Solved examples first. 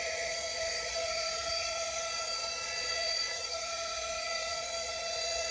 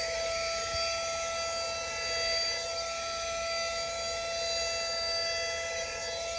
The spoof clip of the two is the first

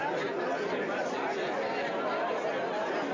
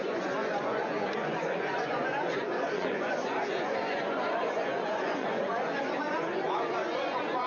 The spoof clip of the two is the second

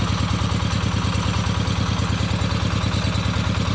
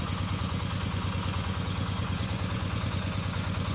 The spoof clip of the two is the second